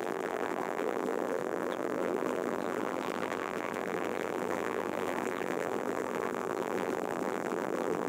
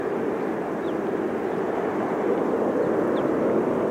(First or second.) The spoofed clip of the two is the first